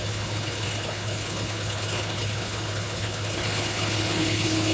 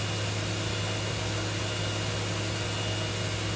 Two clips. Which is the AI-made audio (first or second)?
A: first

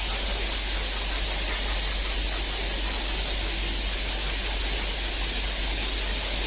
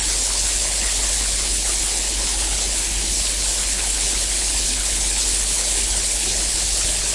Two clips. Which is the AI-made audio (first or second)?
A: second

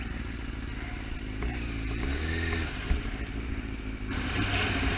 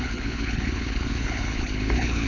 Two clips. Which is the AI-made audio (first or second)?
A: second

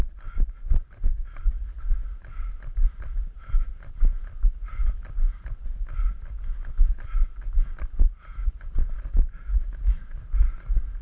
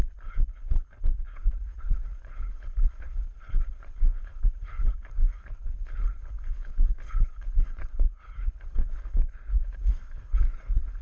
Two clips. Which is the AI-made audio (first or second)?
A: second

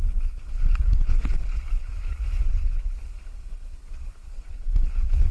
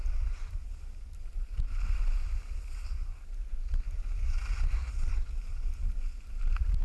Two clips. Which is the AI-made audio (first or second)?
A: first